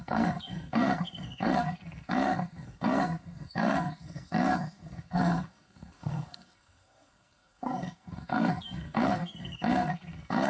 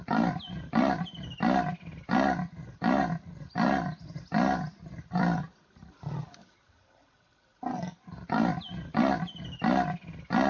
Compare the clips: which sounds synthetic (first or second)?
first